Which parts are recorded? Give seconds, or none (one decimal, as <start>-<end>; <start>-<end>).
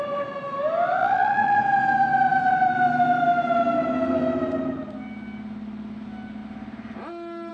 0.0-1.0; 1.6-7.5